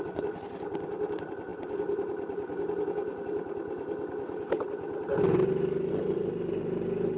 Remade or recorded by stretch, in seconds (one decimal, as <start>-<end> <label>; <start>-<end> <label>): 0.0-7.2 recorded